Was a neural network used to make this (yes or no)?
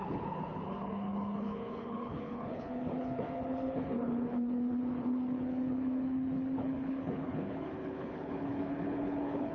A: yes